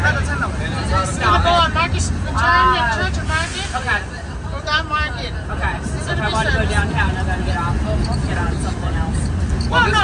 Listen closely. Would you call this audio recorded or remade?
recorded